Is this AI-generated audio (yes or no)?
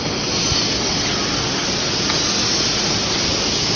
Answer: no